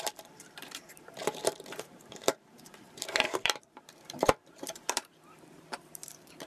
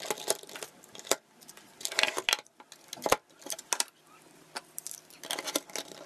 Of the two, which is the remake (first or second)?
first